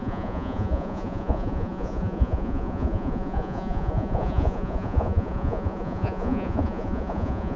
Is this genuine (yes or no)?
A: no